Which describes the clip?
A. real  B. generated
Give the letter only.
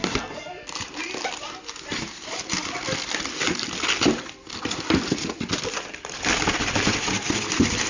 B